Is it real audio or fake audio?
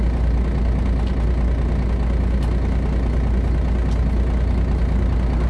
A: real